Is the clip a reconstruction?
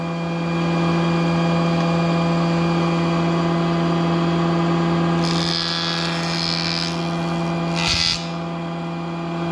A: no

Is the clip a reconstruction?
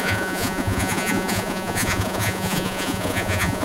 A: yes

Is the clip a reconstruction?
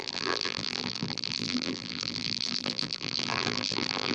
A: yes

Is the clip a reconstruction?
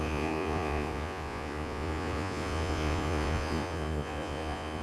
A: yes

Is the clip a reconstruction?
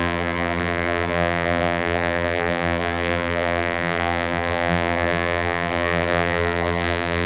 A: yes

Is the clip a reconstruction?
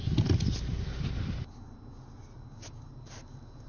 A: no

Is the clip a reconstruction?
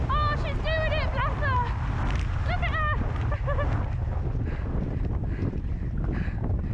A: no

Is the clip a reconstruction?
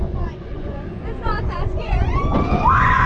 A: yes